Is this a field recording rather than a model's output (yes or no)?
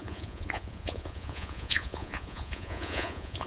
no